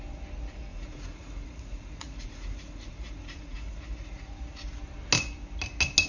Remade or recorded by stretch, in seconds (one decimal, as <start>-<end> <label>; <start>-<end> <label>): 0.0-0.7 recorded; 0.7-4.4 remade; 4.4-6.1 recorded